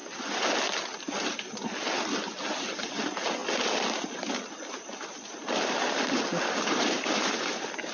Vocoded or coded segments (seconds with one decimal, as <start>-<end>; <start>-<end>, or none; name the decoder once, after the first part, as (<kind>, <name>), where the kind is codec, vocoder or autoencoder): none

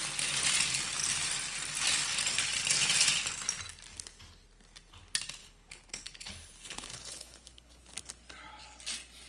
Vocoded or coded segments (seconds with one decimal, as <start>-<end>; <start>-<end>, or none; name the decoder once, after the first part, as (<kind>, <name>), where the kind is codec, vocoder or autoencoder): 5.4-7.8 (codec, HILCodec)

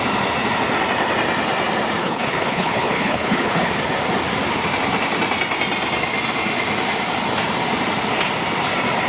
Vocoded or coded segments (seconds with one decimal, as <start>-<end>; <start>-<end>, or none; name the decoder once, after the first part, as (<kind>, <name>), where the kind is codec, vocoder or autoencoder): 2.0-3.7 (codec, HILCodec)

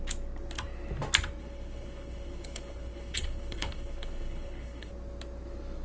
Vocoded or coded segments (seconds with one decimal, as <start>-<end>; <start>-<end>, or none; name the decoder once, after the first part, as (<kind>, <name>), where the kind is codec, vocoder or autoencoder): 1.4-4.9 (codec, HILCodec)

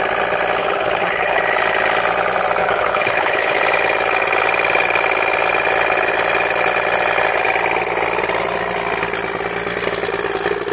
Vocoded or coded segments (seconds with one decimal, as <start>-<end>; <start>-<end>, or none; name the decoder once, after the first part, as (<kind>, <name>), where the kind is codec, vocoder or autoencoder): 0.6-1.4 (codec, HILCodec); 2.6-3.6

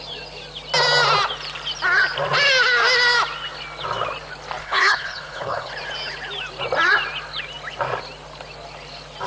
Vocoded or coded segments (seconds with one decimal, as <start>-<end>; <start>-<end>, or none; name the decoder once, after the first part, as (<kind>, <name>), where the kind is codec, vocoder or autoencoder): 4.6-5.7 (codec, HILCodec)

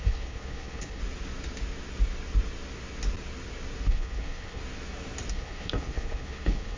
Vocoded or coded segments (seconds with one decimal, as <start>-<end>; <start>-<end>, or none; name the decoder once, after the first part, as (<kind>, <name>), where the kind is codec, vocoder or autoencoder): 0.0-1.0 (codec, HILCodec); 3.9-4.6; 5.3-6.8